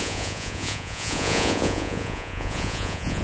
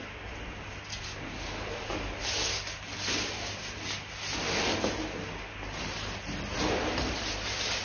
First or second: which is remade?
first